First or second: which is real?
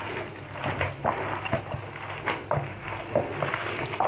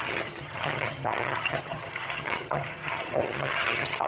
first